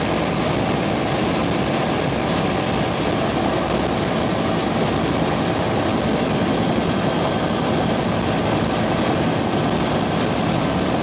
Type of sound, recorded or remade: recorded